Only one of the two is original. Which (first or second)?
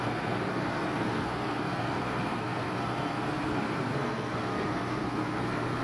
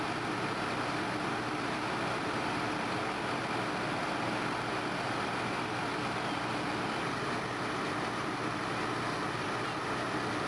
second